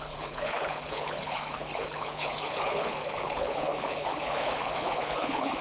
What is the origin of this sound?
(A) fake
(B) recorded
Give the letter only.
A